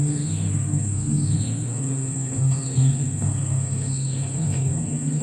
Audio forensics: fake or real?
fake